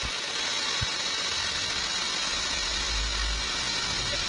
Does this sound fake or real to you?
real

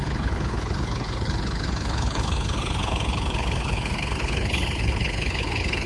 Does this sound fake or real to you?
fake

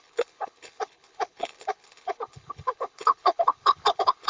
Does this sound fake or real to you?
fake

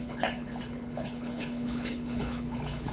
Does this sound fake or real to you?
fake